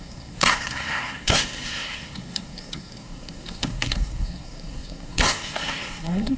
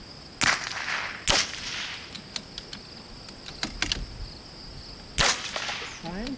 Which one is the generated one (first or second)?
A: first